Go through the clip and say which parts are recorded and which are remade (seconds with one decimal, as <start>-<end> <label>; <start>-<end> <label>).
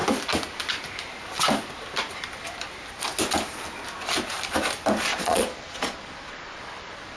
0.0-5.1 recorded; 5.1-7.2 remade